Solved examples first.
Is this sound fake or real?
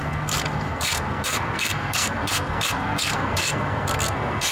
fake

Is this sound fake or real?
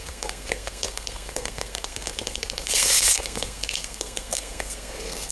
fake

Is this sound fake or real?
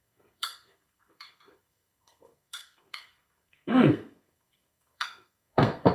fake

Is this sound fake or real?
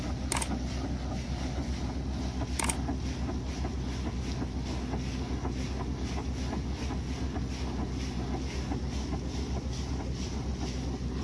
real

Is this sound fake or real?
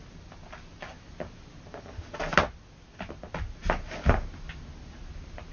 real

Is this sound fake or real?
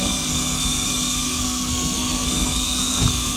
fake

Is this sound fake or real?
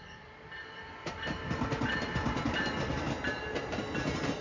real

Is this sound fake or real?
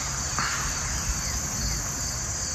real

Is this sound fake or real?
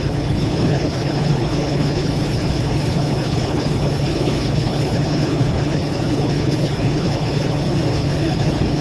fake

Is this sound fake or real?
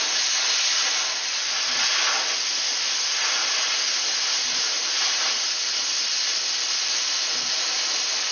real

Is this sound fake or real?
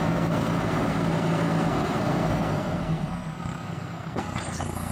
fake